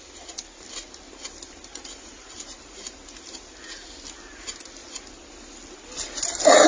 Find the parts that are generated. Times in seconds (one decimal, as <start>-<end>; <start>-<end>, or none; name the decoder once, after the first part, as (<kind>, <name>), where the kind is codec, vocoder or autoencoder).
none

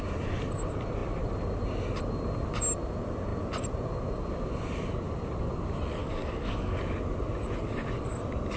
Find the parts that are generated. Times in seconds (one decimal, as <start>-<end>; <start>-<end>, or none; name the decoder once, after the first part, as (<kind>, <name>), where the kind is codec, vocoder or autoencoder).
6.0-6.8 (codec, DAC)

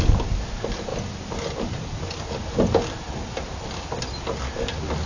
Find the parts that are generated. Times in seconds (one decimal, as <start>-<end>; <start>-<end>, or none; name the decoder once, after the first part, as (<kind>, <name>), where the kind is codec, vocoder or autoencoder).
none